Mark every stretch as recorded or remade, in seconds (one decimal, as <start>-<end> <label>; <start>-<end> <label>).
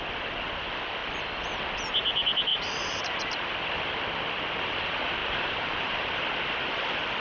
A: 0.0-2.5 recorded; 2.5-3.3 remade; 3.3-5.2 recorded; 5.2-6.1 remade; 6.1-7.2 recorded